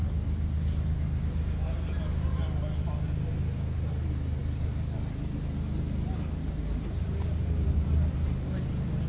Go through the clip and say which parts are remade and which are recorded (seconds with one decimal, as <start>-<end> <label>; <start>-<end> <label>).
0.0-9.1 recorded